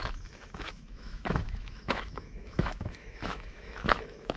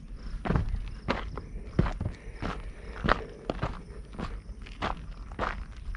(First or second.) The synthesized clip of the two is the first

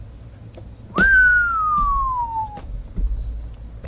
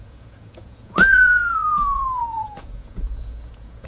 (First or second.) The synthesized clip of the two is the second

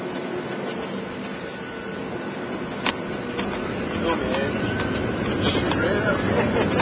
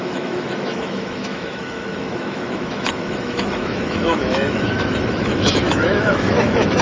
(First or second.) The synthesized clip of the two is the second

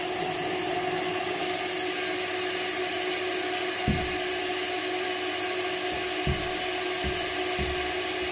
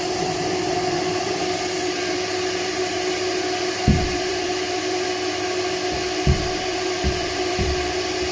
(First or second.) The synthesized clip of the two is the second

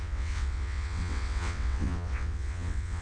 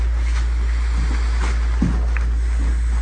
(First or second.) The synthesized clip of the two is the first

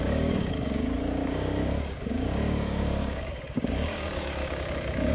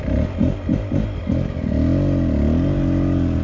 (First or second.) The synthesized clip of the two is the first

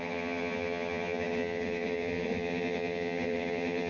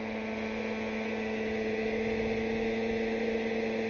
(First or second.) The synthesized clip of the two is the first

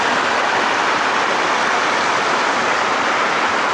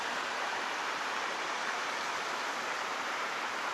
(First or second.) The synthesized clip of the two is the second